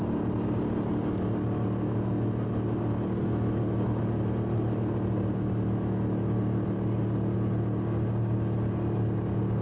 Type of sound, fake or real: real